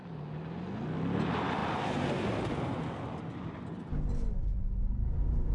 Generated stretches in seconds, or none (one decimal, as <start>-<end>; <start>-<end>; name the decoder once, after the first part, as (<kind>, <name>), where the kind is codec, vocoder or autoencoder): none